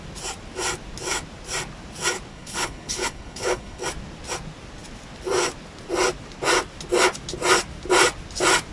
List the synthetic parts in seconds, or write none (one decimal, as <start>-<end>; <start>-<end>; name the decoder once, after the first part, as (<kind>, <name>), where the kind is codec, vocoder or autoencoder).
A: 2.3-3.8 (codec, HILCodec)